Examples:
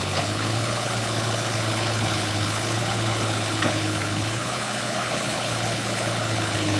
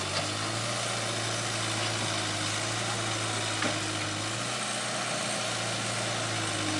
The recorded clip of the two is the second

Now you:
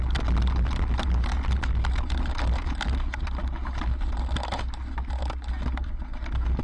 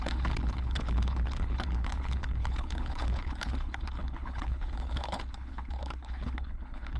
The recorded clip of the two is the first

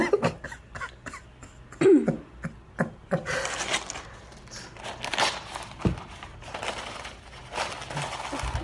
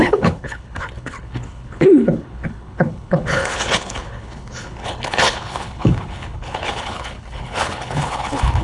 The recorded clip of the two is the first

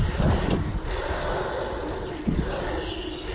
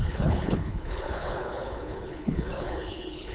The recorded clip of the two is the first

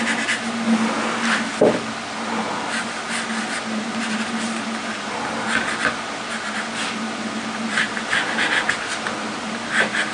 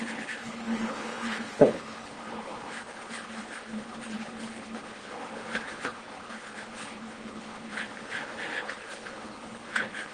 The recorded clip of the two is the first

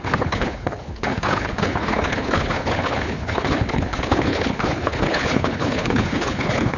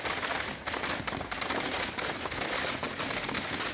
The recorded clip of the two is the second